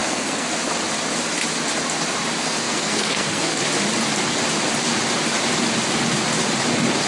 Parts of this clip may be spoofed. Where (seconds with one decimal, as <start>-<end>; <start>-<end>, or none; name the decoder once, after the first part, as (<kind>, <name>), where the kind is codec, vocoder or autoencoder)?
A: 0.0-0.5 (codec, SNAC); 2.4-3.6